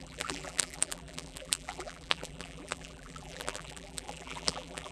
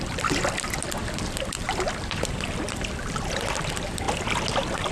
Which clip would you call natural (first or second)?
second